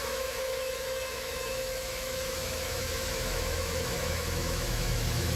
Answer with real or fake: fake